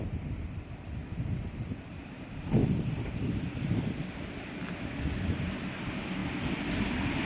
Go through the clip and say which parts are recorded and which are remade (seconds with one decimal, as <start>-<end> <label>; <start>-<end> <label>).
0.0-7.2 recorded